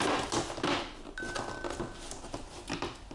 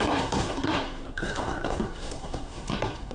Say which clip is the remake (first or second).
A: second